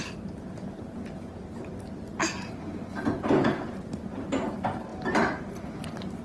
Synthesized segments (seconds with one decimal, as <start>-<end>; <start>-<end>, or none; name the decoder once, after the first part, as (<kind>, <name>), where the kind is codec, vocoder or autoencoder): 4.9-5.7 (vocoder, BigVGAN v2)